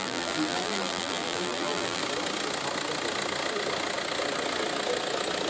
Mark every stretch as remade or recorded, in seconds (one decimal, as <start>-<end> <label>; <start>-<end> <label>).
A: 0.0-2.0 remade; 2.0-5.5 recorded